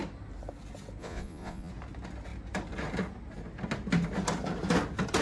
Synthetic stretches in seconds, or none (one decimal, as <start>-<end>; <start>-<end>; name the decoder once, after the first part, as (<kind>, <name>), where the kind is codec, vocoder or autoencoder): 1.0-1.7 (vocoder, Vocos)